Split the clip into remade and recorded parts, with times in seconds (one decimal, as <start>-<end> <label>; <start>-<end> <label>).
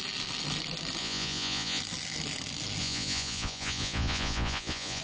0.0-1.0 recorded; 1.0-1.8 remade; 1.8-2.8 recorded; 2.8-5.0 remade